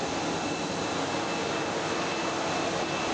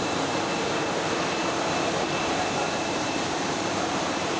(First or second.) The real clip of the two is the first